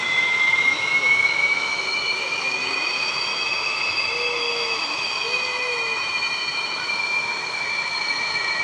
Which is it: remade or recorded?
remade